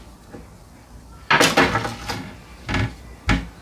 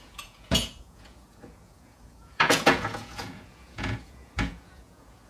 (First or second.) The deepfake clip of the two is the second